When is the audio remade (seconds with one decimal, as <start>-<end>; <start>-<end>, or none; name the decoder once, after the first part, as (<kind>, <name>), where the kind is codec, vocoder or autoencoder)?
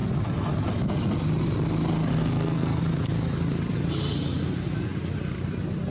2.1-2.8 (codec, SNAC)